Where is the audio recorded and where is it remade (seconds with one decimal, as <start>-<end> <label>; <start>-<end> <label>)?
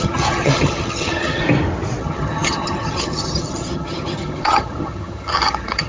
0.0-1.4 remade; 1.4-2.0 recorded; 2.0-5.9 remade